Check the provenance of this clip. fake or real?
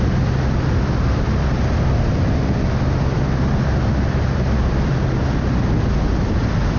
real